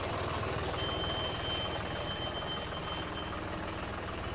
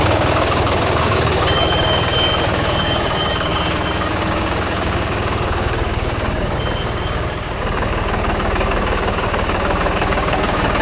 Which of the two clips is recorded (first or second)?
first